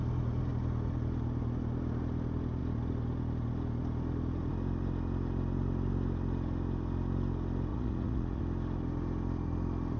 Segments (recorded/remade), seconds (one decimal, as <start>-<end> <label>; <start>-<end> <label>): 0.0-7.7 recorded; 7.7-8.4 remade; 8.4-10.0 recorded

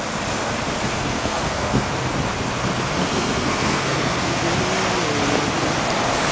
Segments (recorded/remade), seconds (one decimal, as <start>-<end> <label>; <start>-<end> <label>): 0.0-0.9 recorded; 0.9-1.9 remade; 1.9-3.0 recorded; 3.0-4.4 remade; 4.4-6.3 recorded

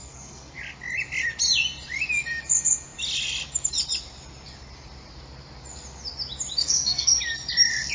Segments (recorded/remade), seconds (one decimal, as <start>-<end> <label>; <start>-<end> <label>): 0.0-0.6 remade; 0.6-6.6 recorded; 6.6-7.2 remade; 7.2-7.9 recorded